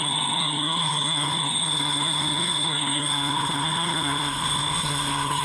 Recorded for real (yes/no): no